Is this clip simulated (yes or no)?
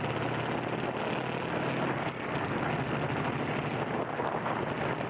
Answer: no